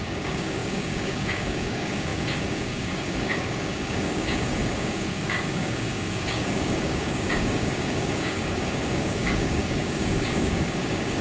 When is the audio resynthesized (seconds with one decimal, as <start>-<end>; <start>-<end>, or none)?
0.0-11.2